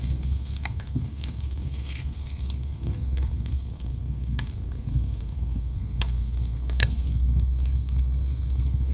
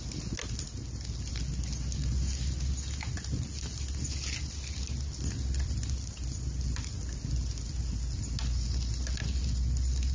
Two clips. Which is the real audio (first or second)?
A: second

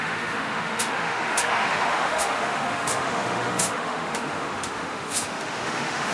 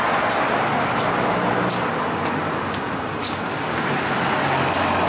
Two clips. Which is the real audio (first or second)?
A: second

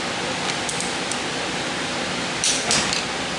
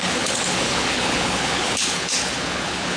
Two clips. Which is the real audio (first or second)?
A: first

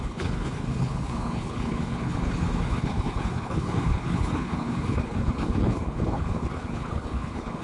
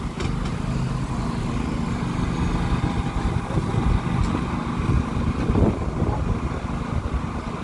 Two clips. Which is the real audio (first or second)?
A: second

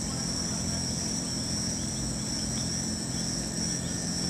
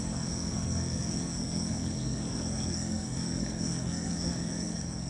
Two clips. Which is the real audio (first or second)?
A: first